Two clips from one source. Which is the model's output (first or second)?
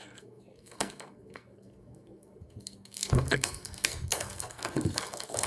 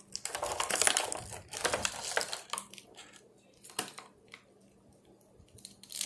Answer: first